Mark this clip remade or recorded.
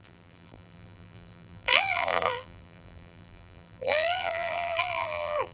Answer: remade